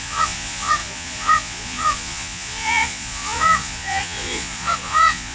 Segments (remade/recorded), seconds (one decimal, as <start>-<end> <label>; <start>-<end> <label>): 0.0-5.3 remade